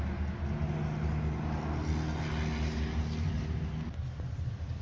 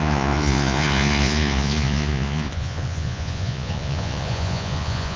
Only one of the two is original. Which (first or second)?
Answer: first